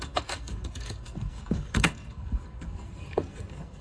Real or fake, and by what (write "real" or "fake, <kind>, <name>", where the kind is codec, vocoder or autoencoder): fake, codec, SNAC